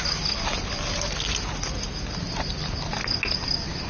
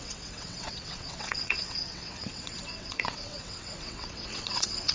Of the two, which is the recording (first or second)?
first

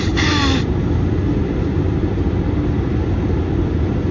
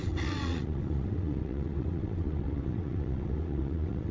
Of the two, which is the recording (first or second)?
first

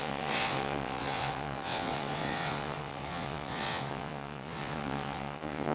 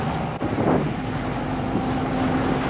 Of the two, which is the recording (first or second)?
second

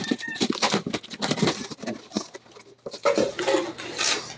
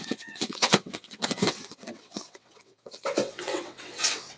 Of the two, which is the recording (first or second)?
first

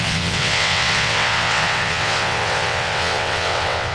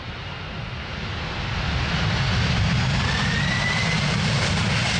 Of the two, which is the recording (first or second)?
second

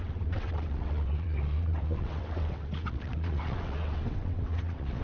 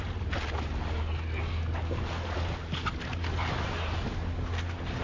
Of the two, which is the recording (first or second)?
second